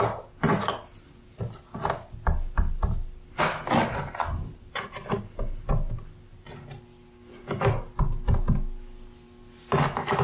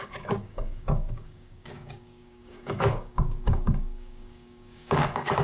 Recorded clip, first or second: first